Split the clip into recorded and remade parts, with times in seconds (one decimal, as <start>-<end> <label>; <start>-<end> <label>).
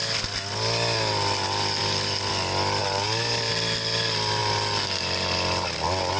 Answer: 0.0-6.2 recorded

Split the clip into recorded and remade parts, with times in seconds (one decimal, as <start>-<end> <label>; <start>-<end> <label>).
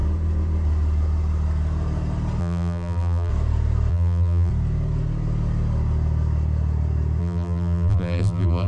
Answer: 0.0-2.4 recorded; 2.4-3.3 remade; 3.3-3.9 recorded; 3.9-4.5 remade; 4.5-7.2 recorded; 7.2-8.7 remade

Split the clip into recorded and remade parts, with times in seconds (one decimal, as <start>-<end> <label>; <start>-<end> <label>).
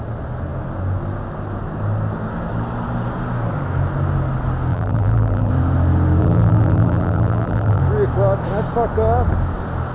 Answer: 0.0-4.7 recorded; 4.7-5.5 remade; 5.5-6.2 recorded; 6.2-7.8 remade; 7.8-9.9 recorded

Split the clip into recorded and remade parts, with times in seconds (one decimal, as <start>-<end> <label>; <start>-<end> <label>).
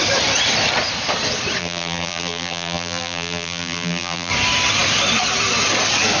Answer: 0.0-1.6 recorded; 1.6-4.3 remade; 4.3-6.2 recorded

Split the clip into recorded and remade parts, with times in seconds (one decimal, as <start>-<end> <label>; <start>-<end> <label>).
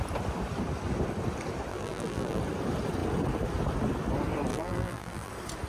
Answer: 0.0-1.7 recorded; 1.7-2.4 remade; 2.4-4.5 recorded; 4.5-5.3 remade; 5.3-5.7 recorded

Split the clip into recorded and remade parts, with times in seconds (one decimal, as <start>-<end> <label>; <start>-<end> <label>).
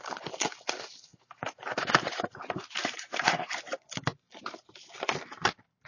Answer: 0.0-1.1 recorded; 1.1-4.6 remade; 4.6-5.9 recorded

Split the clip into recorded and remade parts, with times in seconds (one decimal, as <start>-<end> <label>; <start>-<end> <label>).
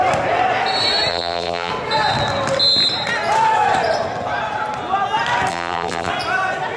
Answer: 0.0-1.1 recorded; 1.1-1.7 remade; 1.7-5.5 recorded; 5.5-6.1 remade; 6.1-6.8 recorded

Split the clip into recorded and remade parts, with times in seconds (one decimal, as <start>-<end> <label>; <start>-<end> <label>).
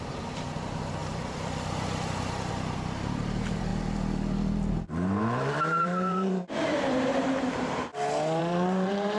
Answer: 0.0-3.7 remade; 3.7-4.7 recorded; 4.7-7.9 remade; 7.9-8.4 recorded; 8.4-9.2 remade